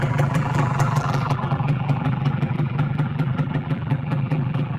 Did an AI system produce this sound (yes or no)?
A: yes